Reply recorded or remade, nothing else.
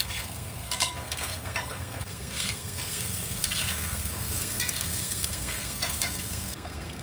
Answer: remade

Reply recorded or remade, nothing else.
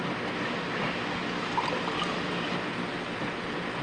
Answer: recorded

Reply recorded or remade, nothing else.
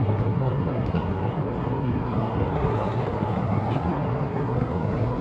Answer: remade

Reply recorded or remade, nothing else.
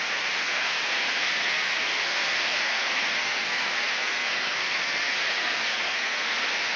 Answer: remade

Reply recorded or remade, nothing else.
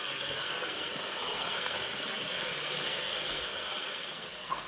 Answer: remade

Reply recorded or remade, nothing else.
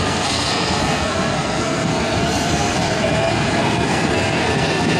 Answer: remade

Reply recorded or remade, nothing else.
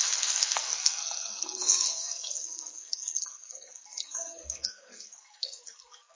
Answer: remade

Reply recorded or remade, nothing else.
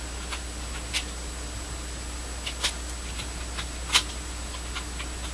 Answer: recorded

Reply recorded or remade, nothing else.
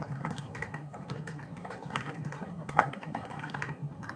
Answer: remade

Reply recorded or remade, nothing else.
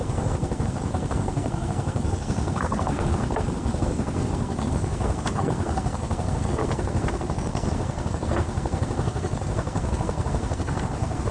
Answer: remade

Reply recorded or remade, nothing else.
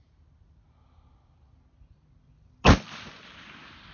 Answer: recorded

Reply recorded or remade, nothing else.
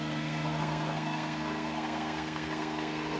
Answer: remade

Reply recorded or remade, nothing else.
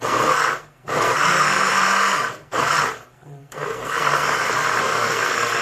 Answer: remade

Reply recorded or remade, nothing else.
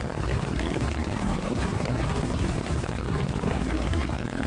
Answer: remade